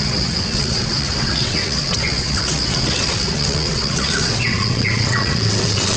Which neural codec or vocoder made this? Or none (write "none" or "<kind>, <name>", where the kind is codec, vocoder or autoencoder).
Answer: vocoder, WaveNeXt